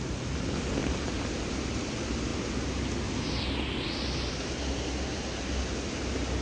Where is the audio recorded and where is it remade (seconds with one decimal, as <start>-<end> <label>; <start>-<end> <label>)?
0.0-0.8 recorded; 0.8-1.5 remade; 1.5-6.4 recorded